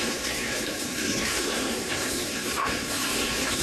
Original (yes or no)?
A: no